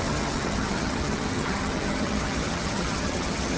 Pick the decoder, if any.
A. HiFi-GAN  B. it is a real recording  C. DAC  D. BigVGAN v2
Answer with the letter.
A